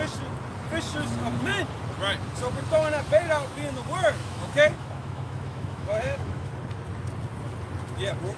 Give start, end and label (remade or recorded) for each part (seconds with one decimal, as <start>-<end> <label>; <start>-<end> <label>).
0.0-4.2 recorded; 4.2-6.5 remade; 6.5-8.4 recorded